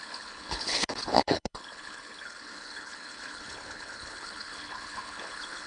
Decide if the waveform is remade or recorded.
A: remade